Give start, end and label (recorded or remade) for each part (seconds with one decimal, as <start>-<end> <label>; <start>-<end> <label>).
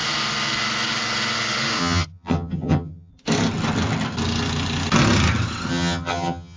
0.0-1.8 recorded; 1.8-3.1 remade; 3.1-5.7 recorded; 5.7-6.6 remade